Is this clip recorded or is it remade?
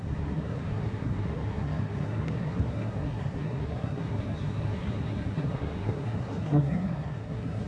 remade